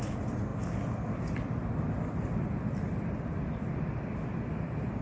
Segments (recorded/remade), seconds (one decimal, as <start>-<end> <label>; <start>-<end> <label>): 0.0-5.0 recorded